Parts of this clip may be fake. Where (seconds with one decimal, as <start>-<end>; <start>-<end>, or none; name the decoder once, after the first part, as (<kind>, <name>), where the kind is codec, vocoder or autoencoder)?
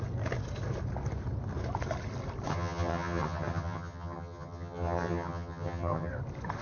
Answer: 2.5-6.1 (vocoder, HiFi-GAN)